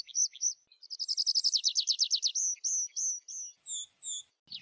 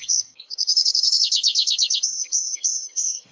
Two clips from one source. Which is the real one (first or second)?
first